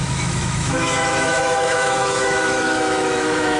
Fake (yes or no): yes